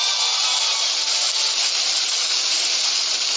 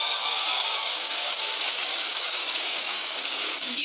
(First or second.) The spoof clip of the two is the second